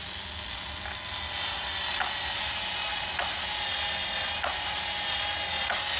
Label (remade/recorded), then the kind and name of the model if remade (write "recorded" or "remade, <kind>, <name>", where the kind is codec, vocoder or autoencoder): recorded